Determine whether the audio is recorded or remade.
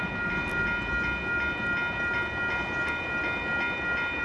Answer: recorded